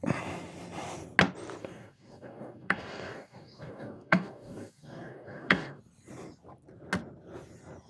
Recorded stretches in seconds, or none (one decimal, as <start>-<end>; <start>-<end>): 0.0-1.6; 5.8-7.9